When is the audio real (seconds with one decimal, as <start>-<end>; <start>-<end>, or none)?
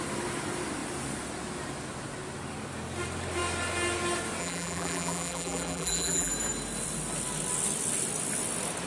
0.0-4.4; 6.3-8.9